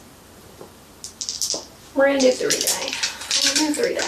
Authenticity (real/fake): real